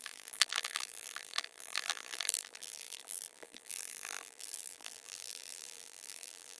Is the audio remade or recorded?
remade